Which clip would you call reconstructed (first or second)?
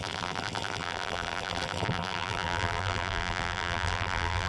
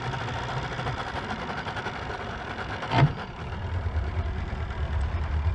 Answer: first